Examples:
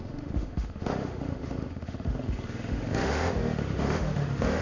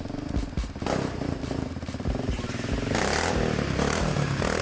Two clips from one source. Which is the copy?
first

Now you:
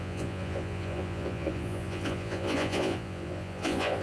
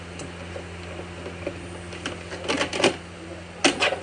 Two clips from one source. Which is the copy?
first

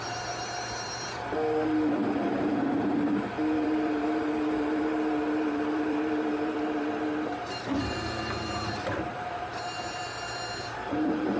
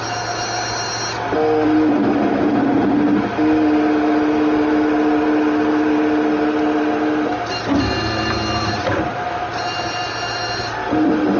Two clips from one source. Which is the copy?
first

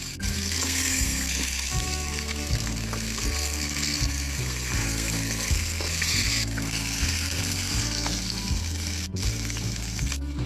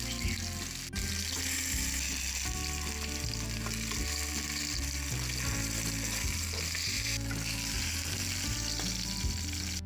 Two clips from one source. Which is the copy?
first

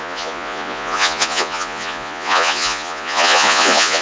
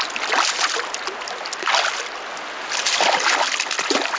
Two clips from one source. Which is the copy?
first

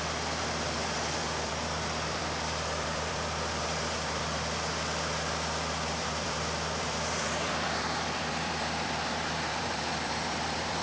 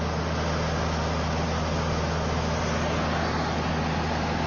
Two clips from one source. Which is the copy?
first